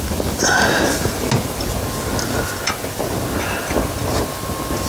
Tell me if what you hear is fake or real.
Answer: real